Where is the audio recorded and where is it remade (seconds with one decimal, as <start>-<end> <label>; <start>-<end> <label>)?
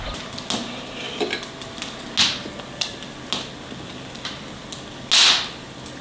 0.0-6.0 recorded